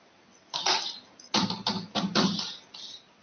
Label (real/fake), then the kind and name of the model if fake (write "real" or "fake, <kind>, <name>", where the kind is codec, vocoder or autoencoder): real